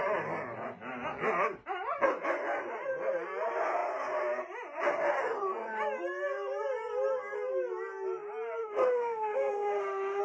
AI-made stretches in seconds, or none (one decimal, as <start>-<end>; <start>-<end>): 8.6-10.2